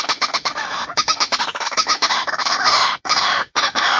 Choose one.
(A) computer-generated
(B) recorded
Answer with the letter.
A